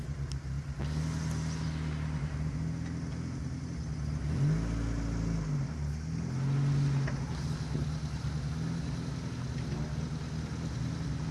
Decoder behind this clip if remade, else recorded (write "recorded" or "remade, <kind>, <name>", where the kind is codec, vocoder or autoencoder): recorded